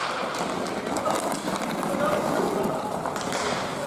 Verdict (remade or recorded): recorded